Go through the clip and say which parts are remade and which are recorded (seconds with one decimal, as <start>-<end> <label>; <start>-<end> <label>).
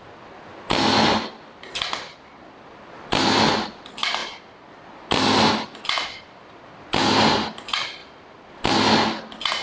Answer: 0.0-9.6 recorded